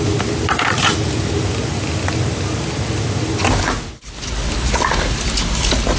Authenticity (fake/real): real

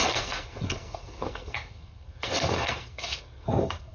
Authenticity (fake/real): fake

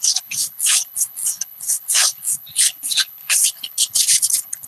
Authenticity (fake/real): fake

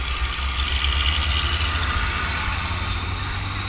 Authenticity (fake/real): real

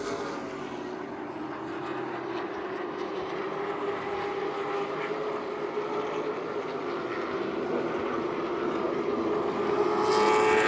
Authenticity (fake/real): real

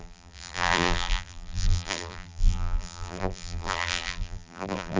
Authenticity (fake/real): fake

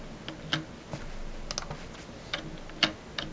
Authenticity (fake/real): real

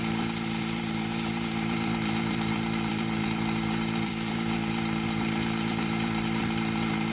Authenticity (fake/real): fake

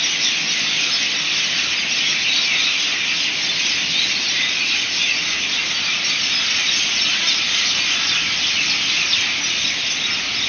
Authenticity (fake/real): real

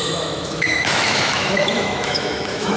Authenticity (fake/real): fake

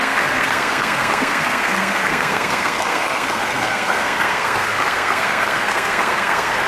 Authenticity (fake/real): fake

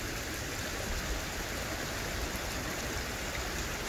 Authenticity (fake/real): real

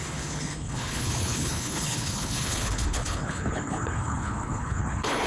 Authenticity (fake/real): fake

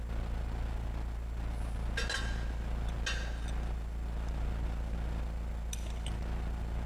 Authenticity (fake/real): real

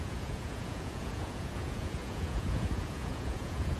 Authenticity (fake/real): fake